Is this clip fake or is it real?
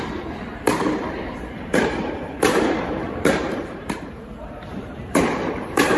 fake